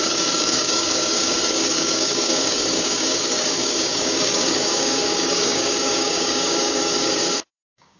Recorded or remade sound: remade